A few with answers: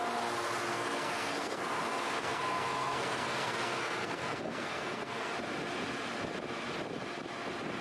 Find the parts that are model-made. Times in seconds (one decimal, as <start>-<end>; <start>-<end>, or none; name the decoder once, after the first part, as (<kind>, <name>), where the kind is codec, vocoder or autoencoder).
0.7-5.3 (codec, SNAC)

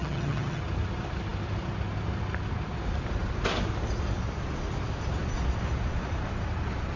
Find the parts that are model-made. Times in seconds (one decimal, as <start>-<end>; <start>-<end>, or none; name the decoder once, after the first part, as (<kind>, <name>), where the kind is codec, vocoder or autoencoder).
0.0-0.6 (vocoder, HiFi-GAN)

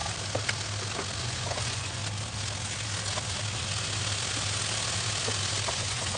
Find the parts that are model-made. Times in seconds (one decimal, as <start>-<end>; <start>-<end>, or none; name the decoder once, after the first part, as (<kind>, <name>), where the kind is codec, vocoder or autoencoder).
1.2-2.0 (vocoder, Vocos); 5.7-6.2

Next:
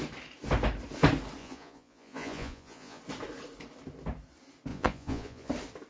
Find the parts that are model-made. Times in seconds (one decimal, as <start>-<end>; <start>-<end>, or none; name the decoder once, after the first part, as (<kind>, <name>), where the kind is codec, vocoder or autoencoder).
1.4-3.0 (vocoder, Vocos); 4.7-5.5

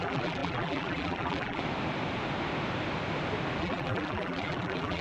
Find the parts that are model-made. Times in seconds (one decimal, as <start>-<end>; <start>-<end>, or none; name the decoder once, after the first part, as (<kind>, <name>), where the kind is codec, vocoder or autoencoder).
0.0-1.6 (vocoder, BigVGAN v2); 3.6-5.0

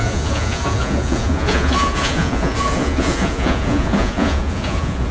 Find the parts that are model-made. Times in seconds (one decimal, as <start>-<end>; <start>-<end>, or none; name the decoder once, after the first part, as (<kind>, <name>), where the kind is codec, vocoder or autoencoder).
0.0-5.1 (vocoder, Vocos)